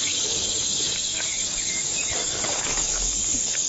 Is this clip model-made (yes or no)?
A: yes